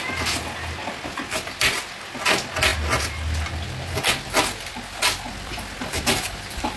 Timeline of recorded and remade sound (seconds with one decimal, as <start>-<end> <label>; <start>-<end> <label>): 0.0-6.8 recorded

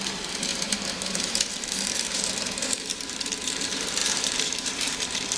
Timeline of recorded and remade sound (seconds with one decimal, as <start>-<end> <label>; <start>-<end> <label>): 0.0-5.4 remade

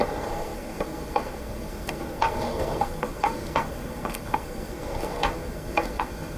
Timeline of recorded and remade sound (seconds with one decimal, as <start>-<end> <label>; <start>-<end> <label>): 0.0-6.4 remade

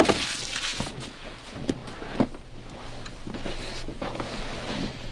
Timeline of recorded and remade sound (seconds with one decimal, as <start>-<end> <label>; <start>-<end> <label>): 0.0-0.7 recorded; 0.7-1.3 remade; 1.3-3.9 recorded; 3.9-4.4 remade; 4.4-5.1 recorded

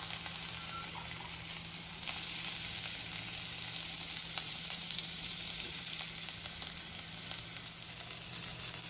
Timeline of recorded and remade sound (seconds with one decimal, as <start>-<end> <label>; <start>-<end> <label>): 0.0-4.2 recorded; 4.2-6.0 remade; 6.0-8.9 recorded

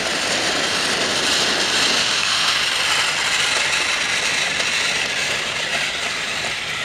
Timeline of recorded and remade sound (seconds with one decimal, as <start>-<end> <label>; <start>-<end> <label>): 0.0-2.0 recorded; 2.0-2.6 remade; 2.6-6.8 recorded

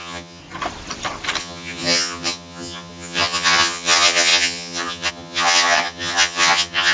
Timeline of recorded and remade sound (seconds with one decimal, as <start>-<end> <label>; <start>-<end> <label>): 0.0-0.4 remade; 0.4-1.4 recorded; 1.4-6.9 remade